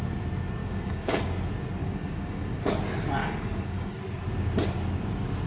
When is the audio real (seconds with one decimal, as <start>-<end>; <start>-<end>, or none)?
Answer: 0.0-0.6; 1.2-1.8; 2.7-3.2; 4.0-5.5